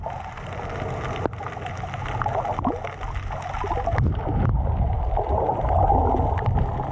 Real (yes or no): yes